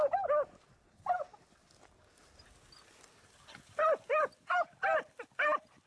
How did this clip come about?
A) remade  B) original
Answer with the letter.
B